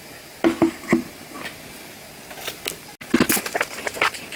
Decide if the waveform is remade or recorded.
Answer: recorded